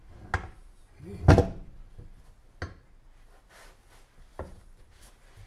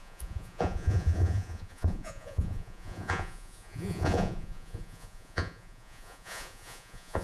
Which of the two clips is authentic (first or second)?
first